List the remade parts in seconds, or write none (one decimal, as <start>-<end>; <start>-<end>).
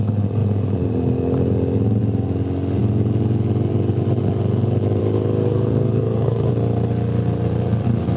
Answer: 5.4-6.5